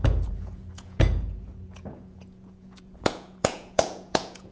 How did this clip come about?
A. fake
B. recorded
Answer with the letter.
A